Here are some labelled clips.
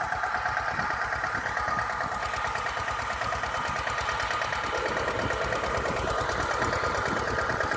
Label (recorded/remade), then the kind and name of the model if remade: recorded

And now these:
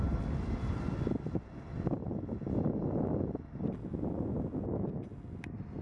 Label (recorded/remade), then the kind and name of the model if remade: recorded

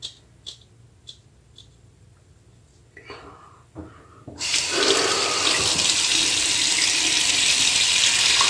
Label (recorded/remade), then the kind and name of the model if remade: recorded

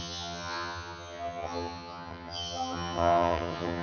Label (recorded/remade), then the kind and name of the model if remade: remade, vocoder, HiFi-GAN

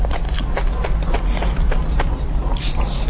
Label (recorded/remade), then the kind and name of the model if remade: recorded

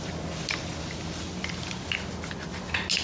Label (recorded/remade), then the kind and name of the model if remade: recorded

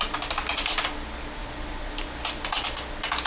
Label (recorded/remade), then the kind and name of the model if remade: recorded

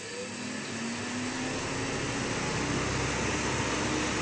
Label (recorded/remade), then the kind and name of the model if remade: recorded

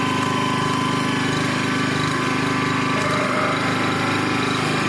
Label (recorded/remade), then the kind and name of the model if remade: recorded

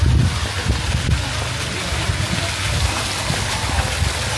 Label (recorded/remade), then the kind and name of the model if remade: recorded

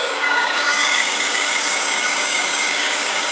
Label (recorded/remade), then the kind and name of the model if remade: remade, codec, DAC